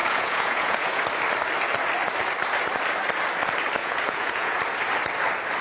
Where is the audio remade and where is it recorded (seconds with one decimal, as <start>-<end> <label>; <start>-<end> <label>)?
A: 0.0-1.0 remade; 1.0-3.8 recorded; 3.8-4.6 remade; 4.6-5.6 recorded